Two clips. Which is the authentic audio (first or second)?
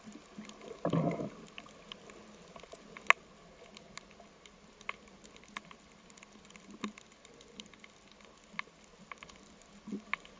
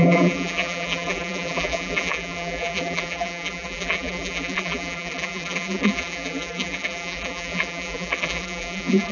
first